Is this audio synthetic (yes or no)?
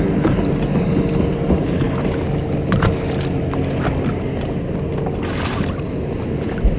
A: no